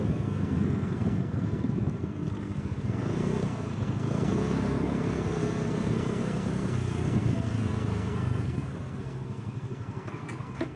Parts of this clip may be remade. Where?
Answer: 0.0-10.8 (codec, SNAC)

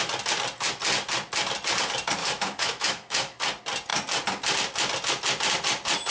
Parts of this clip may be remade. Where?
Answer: 2.2-3.4 (autoencoder, DAC-VAE)

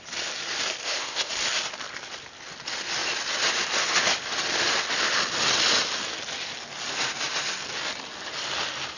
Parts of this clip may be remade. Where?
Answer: 0.8-1.3 (codec, ZipCodec)

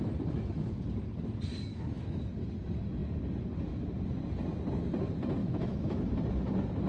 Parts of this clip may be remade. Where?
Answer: 1.7-2.2 (autoencoder, DAC-VAE); 5.4-6.0

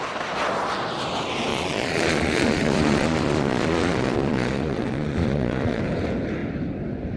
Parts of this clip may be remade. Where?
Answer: 1.5-5.8 (vocoder, Vocos)